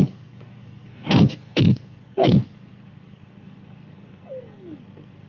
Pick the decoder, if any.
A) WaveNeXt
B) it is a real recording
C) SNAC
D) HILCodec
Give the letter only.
C